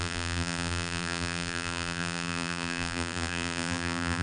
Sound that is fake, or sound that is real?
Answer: fake